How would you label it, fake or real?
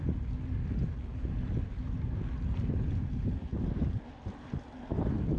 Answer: real